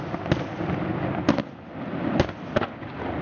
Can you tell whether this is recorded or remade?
recorded